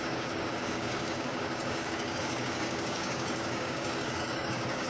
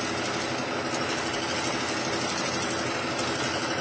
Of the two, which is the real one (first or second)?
second